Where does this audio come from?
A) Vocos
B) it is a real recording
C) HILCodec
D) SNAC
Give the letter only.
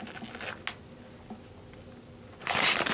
B